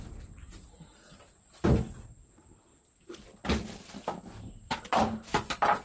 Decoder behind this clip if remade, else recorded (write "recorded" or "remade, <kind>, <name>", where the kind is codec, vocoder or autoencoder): recorded